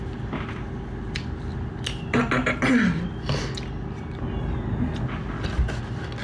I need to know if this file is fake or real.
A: real